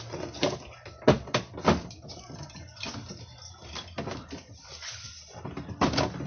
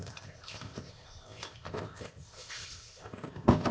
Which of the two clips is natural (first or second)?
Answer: first